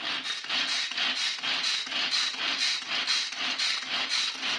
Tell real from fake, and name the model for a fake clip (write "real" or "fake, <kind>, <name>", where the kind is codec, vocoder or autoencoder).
real